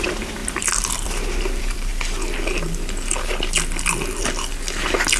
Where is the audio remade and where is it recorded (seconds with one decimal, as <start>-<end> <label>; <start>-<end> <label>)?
0.0-1.9 remade; 1.9-5.2 recorded